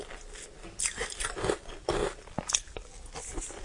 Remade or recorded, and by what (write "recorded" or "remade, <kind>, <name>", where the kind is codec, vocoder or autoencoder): recorded